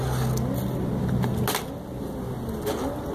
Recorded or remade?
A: recorded